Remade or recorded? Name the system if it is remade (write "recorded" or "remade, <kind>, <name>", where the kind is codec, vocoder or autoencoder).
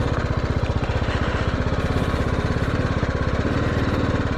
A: recorded